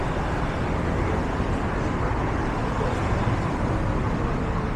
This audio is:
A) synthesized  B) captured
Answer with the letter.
B